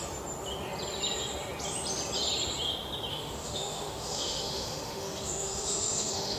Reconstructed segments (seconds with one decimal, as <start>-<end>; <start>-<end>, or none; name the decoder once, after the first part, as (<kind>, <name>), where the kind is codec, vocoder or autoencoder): 3.1-6.4 (autoencoder, DAC-VAE)